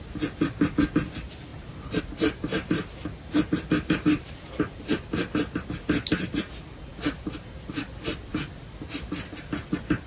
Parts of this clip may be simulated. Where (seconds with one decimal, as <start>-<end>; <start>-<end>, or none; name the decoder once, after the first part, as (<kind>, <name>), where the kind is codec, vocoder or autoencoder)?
1.5-2.0 (vocoder, BigVGAN v2); 2.5-3.2; 6.9-7.7; 8.3-8.9